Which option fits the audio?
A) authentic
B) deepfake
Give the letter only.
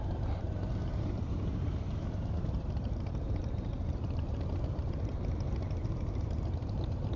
B